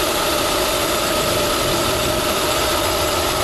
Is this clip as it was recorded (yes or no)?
no